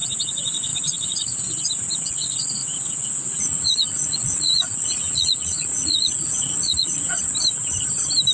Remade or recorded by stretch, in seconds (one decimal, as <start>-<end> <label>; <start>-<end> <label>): 0.0-0.7 recorded; 0.7-1.4 remade; 1.4-2.6 recorded; 2.6-7.2 remade; 7.2-8.3 recorded